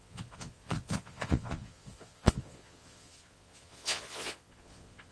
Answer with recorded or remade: remade